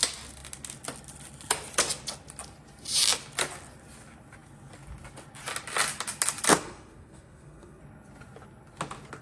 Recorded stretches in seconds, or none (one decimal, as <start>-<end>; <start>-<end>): 0.0-6.5; 7.8-9.2